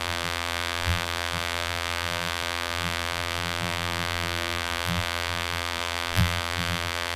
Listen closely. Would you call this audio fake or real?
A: fake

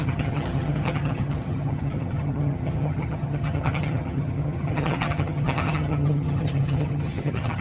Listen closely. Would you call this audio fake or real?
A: fake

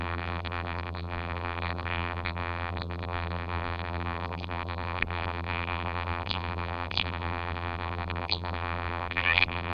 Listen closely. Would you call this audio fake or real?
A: fake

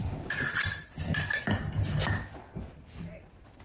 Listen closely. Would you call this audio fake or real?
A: real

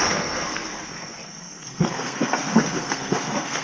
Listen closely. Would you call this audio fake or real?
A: fake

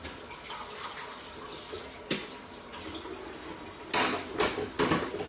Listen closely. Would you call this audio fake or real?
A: real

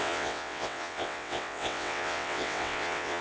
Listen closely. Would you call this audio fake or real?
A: fake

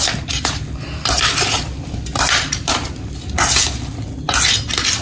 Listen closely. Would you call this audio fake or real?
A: real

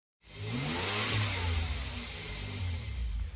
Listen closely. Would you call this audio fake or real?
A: real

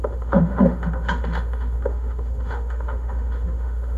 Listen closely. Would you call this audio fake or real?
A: fake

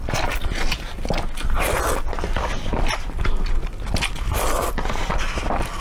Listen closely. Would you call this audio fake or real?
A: real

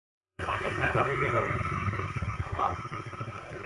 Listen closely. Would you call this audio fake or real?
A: fake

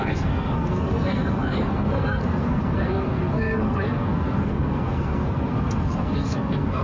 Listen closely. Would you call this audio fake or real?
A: fake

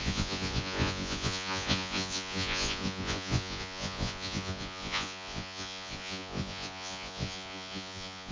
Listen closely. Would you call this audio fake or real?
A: fake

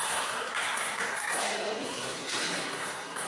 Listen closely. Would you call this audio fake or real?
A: fake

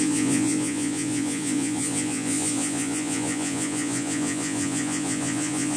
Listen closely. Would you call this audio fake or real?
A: fake